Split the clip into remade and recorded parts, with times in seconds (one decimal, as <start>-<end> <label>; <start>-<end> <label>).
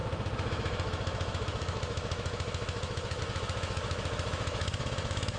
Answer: 0.0-5.4 remade